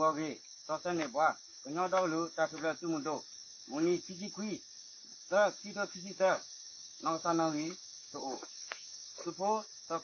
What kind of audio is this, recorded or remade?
remade